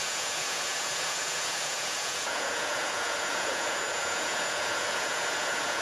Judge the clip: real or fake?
fake